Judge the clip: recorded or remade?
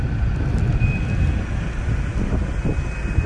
recorded